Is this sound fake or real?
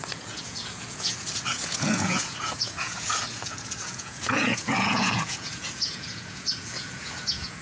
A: fake